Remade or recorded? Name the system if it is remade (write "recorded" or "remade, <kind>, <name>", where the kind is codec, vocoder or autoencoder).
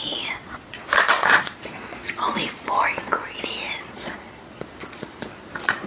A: remade, vocoder, Vocos